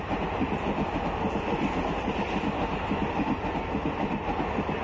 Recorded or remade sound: recorded